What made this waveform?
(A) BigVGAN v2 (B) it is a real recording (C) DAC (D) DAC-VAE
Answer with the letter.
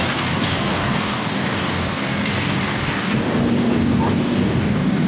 C